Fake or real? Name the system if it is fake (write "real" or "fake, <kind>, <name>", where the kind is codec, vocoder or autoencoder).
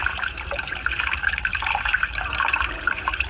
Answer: fake, vocoder, BigVGAN v2